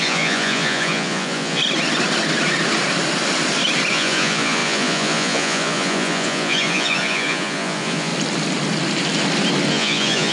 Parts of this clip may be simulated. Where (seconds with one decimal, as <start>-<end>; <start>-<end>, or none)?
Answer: 0.0-1.6; 3.9-8.1; 9.7-10.3